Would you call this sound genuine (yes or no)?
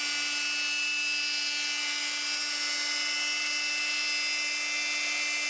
yes